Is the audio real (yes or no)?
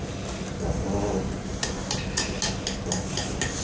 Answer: yes